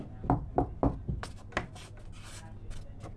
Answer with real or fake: real